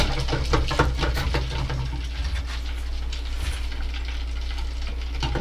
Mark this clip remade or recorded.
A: recorded